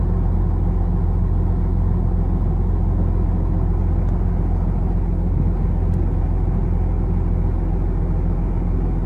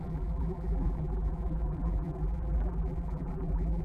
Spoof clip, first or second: second